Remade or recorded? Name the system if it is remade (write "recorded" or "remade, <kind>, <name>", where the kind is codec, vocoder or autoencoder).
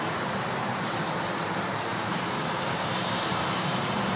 remade, vocoder, BigVGAN v2